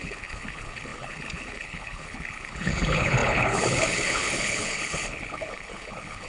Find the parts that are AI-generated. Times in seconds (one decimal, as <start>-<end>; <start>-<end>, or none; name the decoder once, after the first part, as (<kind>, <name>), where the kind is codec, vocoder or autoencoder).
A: 0.0-6.3 (codec, HILCodec)